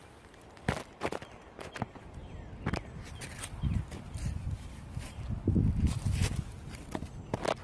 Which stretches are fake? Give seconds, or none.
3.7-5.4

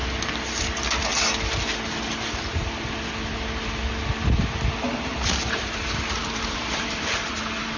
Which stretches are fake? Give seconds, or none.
4.7-7.8

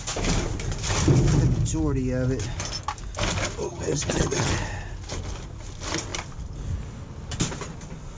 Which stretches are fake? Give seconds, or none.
3.6-4.5

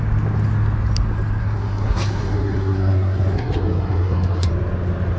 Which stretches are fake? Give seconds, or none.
1.4-4.5

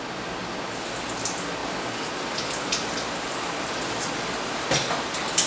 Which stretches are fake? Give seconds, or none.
none

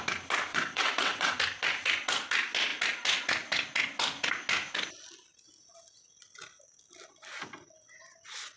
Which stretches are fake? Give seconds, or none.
0.5-1.4